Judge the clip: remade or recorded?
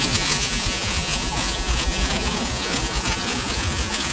remade